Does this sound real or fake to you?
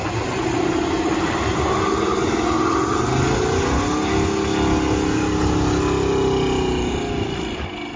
real